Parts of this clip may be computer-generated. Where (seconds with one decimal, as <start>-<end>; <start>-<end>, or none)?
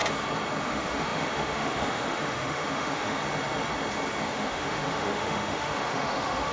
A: 0.6-3.2; 4.2-6.5